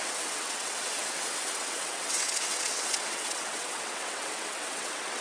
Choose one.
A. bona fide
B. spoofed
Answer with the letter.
B